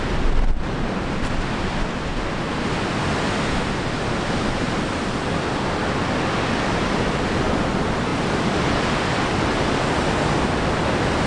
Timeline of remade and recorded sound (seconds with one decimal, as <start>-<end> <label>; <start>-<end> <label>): 0.0-11.3 recorded